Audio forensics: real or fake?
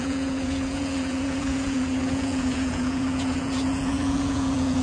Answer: fake